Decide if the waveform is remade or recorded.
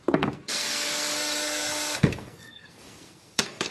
remade